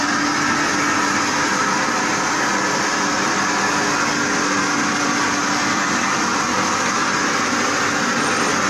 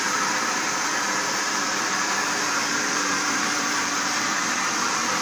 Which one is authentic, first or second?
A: first